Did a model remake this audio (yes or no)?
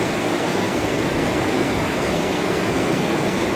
yes